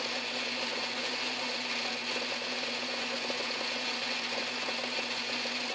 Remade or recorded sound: remade